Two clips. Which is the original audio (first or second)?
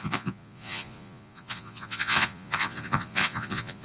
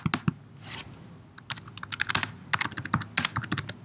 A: second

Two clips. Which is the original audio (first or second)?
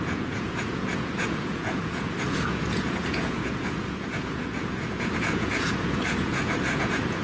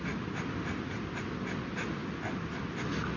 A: second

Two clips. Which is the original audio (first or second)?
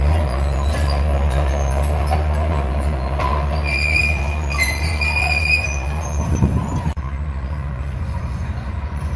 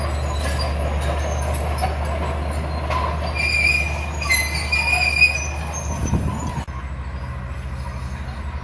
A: second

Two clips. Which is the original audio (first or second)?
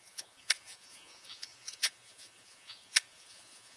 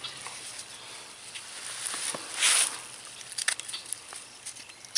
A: second